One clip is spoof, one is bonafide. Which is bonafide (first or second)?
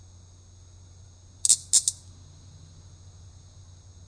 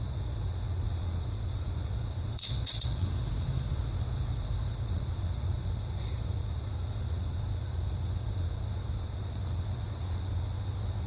first